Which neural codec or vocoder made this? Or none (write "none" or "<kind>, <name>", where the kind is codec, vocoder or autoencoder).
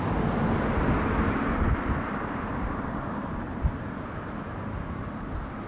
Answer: vocoder, BigVGAN v2